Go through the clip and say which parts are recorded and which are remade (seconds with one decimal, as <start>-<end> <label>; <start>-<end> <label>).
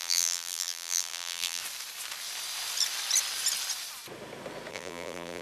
0.0-1.6 remade; 1.6-4.7 recorded; 4.7-5.4 remade